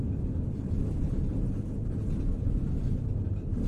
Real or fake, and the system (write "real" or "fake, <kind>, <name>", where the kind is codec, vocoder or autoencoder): real